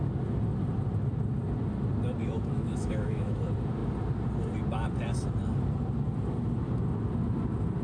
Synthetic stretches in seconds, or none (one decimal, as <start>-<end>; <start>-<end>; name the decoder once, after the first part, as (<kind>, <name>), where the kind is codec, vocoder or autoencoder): 2.2-3.4 (autoencoder, DAC-VAE)